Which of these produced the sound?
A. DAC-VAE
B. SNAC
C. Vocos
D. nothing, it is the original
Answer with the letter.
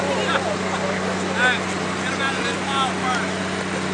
D